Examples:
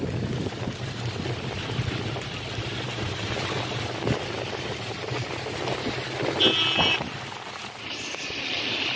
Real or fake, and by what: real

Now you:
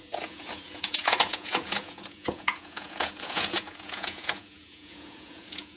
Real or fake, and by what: fake, vocoder, Vocos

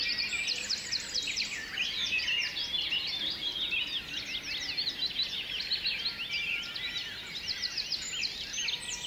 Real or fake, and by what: real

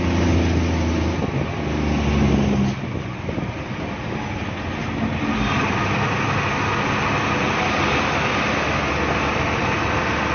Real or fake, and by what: real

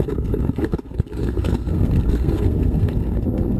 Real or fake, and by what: fake, codec, SNAC